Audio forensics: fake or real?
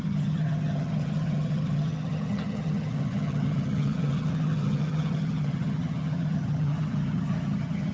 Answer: fake